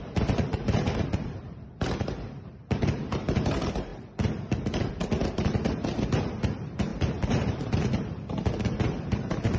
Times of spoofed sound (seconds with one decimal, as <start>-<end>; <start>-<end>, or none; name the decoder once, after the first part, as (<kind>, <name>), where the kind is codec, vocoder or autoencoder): 0.0-9.6 (vocoder, BigVGAN v2)